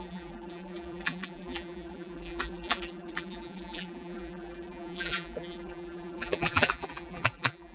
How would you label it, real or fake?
fake